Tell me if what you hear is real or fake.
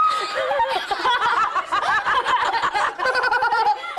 real